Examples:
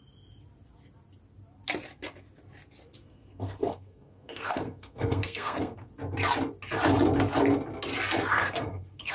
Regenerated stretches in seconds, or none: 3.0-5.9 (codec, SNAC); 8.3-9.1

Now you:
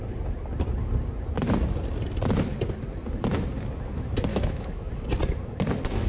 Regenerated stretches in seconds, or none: 4.3-4.9 (autoencoder, DAC-VAE)

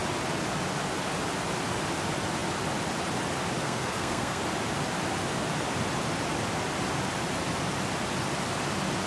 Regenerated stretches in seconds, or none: 3.6-4.4 (codec, SNAC)